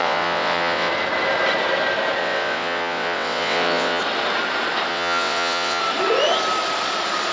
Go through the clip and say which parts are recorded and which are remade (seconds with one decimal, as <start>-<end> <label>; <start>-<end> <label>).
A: 0.0-0.9 remade; 0.9-2.2 recorded; 2.2-4.0 remade; 4.0-4.9 recorded; 4.9-5.8 remade; 5.8-7.3 recorded

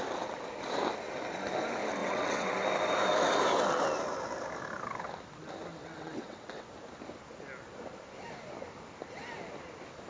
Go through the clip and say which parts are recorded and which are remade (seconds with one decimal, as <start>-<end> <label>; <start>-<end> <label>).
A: 0.0-2.0 recorded; 2.0-2.5 remade; 2.5-5.8 recorded; 5.8-6.7 remade; 6.7-10.1 recorded

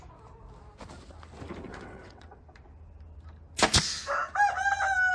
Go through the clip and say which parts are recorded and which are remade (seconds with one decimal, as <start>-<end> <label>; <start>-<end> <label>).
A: 0.0-1.7 recorded; 1.7-2.4 remade; 2.4-5.1 recorded

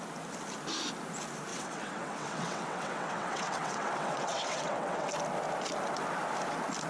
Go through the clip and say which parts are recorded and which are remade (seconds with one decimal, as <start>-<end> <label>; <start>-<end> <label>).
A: 0.0-1.5 recorded; 1.5-5.1 remade; 5.1-6.9 recorded